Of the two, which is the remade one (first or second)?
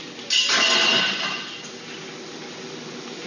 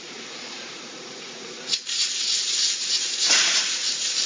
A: second